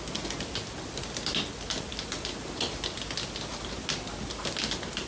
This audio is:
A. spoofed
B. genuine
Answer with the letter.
B